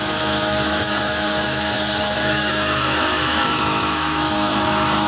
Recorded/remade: remade